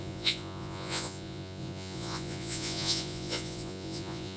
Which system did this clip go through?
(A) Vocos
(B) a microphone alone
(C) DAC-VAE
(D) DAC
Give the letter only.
A